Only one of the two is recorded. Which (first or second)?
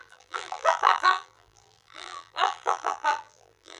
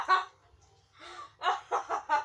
second